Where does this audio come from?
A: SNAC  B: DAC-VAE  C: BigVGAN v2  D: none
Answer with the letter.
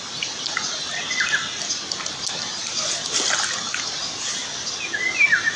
D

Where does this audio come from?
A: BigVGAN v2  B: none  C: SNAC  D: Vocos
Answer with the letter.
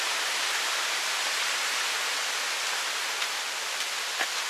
B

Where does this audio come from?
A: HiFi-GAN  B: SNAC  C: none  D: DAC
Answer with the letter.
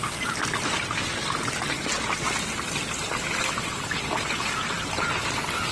C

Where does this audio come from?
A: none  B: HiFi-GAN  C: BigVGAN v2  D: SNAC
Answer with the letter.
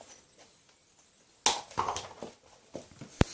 A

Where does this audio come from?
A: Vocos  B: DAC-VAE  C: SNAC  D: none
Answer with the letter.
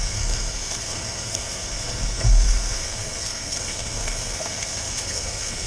C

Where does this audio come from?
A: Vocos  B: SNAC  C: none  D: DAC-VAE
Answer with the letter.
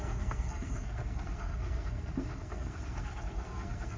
B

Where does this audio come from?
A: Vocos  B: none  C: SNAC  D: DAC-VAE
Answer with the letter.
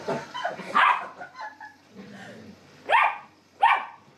B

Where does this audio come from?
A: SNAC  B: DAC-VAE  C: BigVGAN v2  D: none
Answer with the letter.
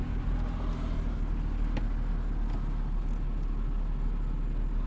D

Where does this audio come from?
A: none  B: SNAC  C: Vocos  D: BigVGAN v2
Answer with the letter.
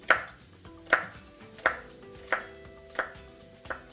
A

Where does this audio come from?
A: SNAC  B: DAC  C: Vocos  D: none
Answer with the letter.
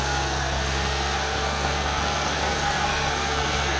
A